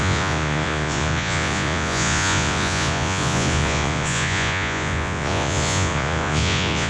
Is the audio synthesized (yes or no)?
yes